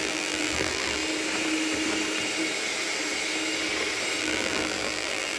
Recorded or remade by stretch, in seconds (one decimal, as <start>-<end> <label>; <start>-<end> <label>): 0.0-1.0 remade; 1.0-4.2 recorded; 4.2-5.4 remade